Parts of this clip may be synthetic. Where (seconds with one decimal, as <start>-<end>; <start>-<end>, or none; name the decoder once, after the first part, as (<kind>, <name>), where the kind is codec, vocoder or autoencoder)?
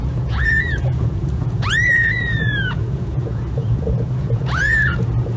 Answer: 0.0-5.4 (vocoder, Vocos)